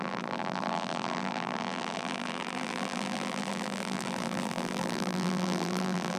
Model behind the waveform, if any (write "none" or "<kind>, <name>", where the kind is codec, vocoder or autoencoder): vocoder, BigVGAN v2